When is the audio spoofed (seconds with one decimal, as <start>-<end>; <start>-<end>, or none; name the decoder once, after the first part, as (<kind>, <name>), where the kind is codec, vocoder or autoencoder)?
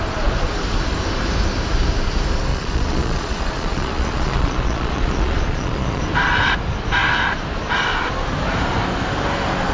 2.5-6.0 (vocoder, Vocos)